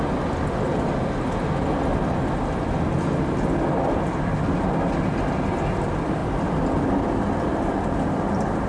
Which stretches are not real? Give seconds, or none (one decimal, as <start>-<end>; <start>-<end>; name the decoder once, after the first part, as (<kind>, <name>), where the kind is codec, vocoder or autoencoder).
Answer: none